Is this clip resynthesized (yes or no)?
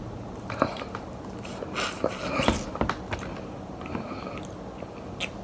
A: no